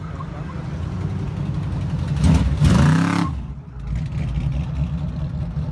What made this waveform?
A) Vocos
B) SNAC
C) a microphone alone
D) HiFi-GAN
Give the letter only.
C